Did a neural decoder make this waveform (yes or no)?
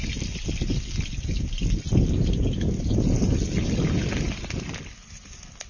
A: no